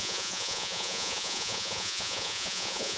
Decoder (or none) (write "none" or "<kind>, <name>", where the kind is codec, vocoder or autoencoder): vocoder, Vocos